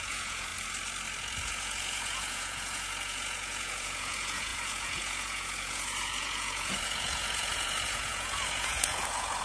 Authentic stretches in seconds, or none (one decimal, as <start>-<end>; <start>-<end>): 0.5-1.2